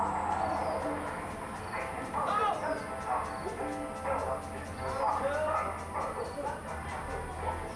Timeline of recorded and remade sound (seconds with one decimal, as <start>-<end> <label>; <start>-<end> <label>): 0.0-6.2 recorded; 6.2-7.0 remade; 7.0-7.8 recorded